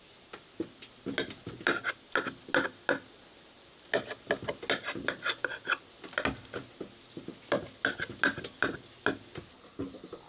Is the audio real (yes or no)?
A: yes